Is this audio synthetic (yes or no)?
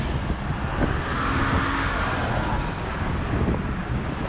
no